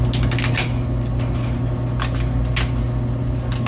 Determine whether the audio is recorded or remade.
recorded